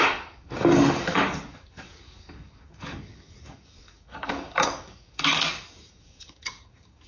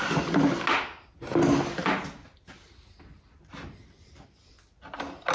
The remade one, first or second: first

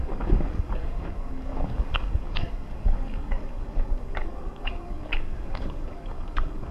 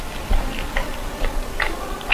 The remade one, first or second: first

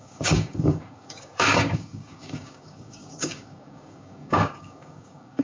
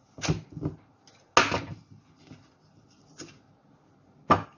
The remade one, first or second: first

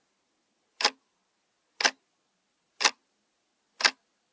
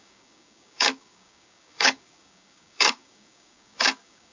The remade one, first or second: second